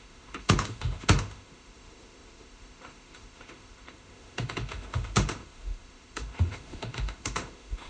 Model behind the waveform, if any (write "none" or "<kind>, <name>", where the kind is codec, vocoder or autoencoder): autoencoder, DAC-VAE